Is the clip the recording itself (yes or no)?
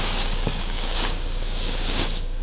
no